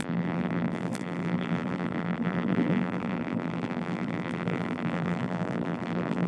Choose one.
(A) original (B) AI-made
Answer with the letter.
B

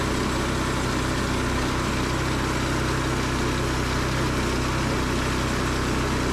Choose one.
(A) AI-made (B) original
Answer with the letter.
B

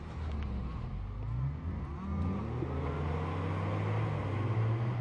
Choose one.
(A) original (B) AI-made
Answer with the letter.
A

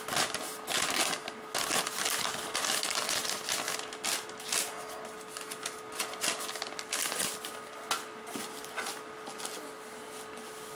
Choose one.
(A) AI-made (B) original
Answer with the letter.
B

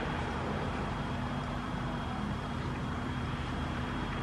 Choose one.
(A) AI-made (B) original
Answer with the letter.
A